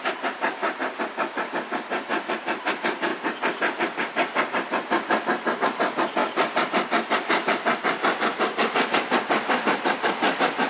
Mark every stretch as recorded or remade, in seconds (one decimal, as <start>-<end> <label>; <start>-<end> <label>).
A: 0.0-0.6 remade; 0.6-1.4 recorded; 1.4-2.1 remade; 2.1-2.7 recorded; 2.7-3.1 remade; 3.1-5.6 recorded; 5.6-10.7 remade